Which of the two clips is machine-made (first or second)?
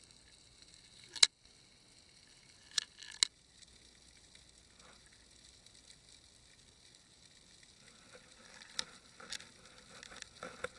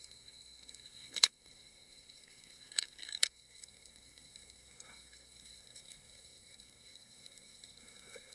second